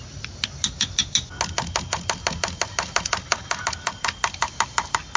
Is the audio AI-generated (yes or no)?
no